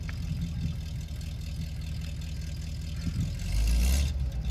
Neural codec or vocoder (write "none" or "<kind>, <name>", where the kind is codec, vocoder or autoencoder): none